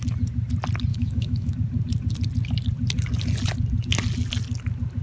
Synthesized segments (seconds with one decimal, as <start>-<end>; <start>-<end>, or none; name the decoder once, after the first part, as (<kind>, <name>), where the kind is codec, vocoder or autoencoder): 0.9-1.5 (autoencoder, DAC-VAE)